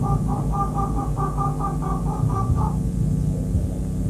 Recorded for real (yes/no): yes